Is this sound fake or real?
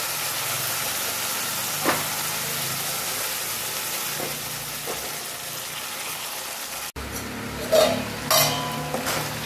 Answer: real